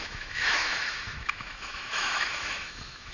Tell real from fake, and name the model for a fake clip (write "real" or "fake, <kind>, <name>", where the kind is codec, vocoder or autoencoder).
fake, autoencoder, DAC-VAE